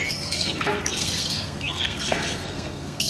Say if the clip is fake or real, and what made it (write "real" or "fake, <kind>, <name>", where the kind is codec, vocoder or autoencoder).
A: fake, codec, SNAC